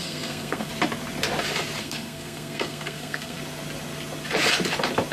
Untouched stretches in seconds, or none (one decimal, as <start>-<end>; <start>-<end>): 0.7-1.8; 3.4-5.1